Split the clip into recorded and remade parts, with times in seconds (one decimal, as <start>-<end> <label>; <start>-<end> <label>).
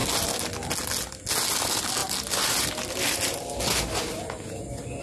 0.0-5.0 recorded